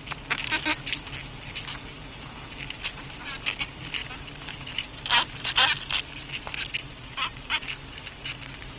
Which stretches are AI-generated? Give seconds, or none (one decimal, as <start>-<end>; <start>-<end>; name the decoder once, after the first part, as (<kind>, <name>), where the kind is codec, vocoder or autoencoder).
none